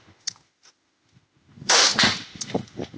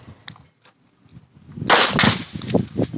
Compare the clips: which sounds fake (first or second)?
first